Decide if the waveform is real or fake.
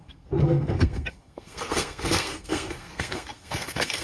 fake